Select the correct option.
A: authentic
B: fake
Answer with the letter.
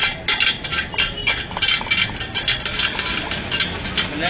A